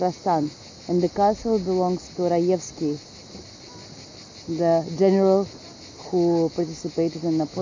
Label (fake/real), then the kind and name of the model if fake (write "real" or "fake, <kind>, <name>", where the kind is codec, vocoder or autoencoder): real